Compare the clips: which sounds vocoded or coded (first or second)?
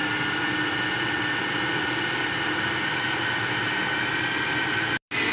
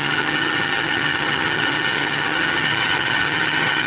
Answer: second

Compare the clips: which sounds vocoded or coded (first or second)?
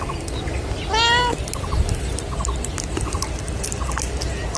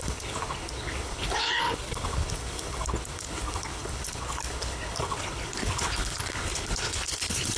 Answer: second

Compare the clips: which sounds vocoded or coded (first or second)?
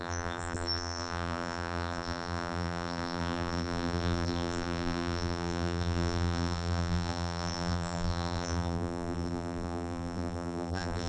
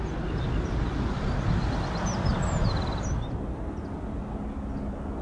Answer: first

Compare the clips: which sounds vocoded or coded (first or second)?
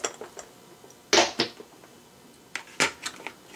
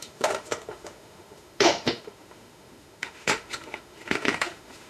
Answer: second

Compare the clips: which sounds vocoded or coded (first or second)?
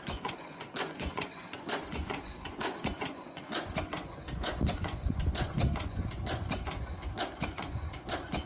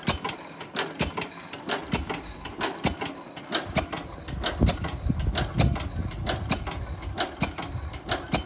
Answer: first